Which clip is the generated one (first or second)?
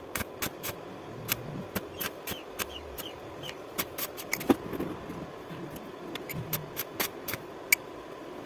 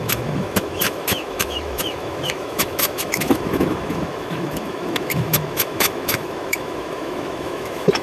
second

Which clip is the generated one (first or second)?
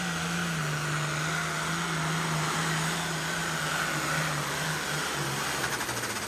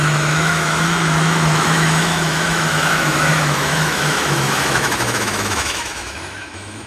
second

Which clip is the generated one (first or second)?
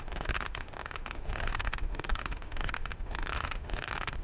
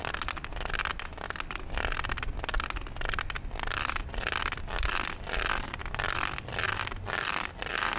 first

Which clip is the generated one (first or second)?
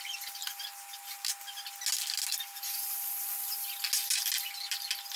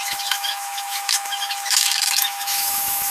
second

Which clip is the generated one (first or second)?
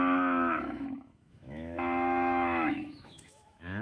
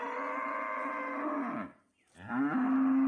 first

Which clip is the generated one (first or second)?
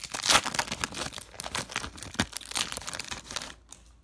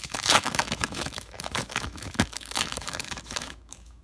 second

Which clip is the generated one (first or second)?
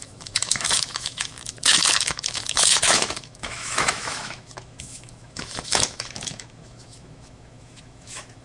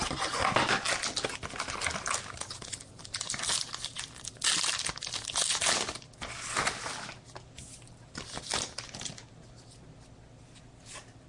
first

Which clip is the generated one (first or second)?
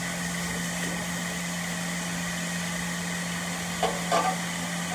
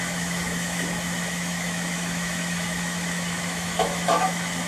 second